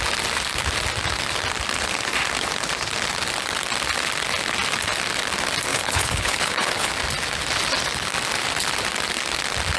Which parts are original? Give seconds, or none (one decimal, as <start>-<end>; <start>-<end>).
0.0-5.7; 6.9-9.8